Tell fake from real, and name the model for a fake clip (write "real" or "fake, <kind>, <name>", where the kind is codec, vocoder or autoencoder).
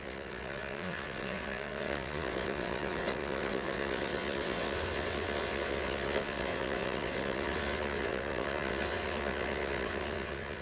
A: fake, vocoder, WaveNeXt